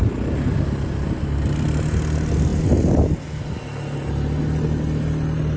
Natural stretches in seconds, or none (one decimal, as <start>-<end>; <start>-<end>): 0.0-5.6

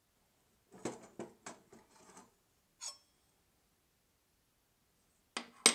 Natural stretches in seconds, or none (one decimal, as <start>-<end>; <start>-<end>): 0.0-5.7

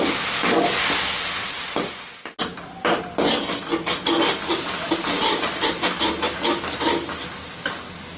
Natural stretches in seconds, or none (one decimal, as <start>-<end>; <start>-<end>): 0.0-8.2

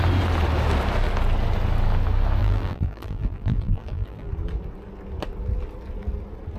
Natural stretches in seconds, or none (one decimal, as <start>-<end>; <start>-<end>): 0.0-2.4; 4.3-6.6

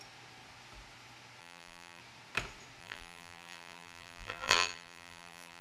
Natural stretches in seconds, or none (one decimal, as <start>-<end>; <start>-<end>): 0.0-1.4; 2.0-2.8